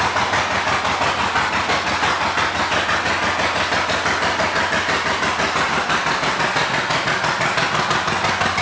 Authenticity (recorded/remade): recorded